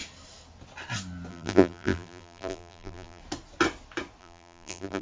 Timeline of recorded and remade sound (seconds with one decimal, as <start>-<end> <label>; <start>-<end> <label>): 0.0-1.3 recorded; 1.3-3.2 remade; 3.2-4.2 recorded; 4.2-5.0 remade